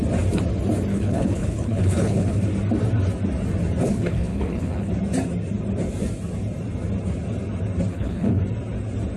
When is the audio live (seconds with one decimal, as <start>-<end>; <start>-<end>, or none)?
0.0-0.9; 2.4-3.9; 4.9-7.9; 8.4-9.2